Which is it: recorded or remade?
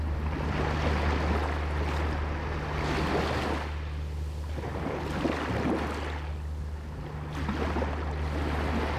recorded